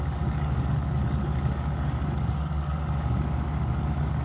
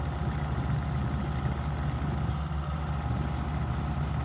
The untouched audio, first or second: second